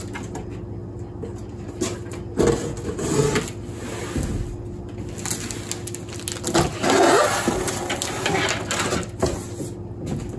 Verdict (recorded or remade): recorded